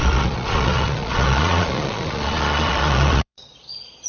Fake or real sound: fake